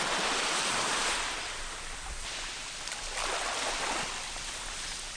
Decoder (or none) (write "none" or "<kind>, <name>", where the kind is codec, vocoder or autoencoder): none